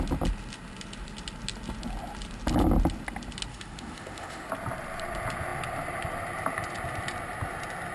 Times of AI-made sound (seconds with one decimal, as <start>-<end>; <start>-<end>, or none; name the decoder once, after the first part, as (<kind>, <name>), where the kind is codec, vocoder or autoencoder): 3.5-4.5 (autoencoder, DAC-VAE)